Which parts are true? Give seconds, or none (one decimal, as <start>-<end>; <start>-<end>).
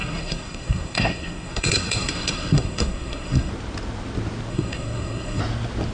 3.5-4.5; 5.4-5.9